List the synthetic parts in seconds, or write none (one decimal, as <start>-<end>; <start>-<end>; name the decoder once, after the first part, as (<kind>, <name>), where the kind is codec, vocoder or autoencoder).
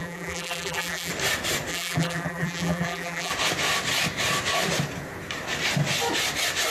0.0-1.1 (vocoder, BigVGAN v2); 1.7-3.3